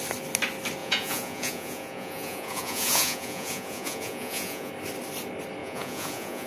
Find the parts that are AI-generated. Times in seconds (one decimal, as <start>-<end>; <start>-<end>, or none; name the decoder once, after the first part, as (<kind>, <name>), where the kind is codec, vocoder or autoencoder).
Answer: 0.8-4.7 (vocoder, Vocos); 5.6-6.5